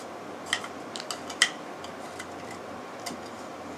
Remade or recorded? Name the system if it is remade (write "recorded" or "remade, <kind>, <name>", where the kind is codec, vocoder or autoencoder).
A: recorded